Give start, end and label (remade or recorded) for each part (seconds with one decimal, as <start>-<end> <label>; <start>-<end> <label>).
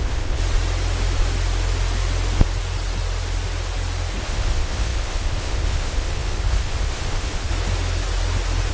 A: 0.0-0.4 remade; 0.4-4.2 recorded; 4.2-7.5 remade; 7.5-8.7 recorded